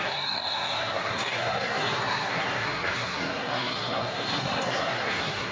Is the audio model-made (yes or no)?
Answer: yes